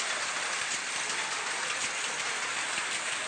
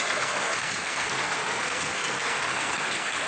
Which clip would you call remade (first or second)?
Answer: second